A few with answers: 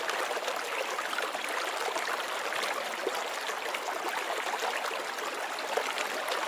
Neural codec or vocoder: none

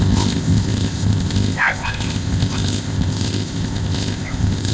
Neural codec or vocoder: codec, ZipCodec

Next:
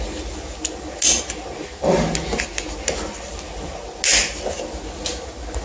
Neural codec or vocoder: none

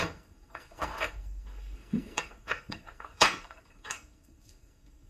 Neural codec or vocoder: codec, SNAC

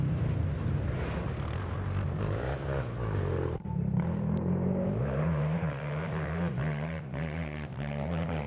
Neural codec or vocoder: vocoder, BigVGAN v2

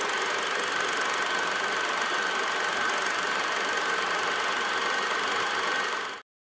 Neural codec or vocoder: none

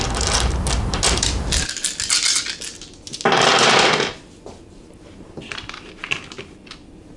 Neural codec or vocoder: none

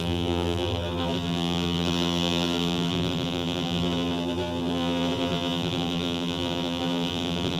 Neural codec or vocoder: vocoder, BigVGAN v2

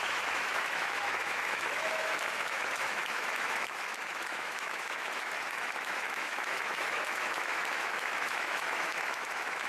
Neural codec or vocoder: autoencoder, DAC-VAE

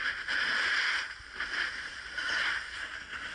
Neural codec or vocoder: none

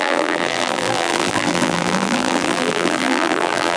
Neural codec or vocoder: vocoder, BigVGAN v2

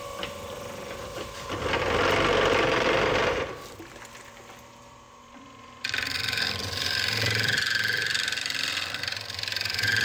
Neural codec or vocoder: vocoder, BigVGAN v2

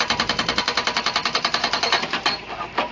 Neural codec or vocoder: vocoder, BigVGAN v2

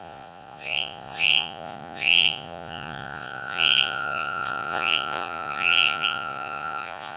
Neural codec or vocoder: vocoder, Vocos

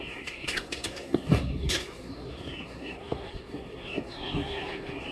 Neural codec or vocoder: codec, SNAC